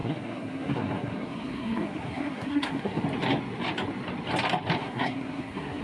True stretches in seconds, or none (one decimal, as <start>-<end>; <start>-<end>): 3.0-4.8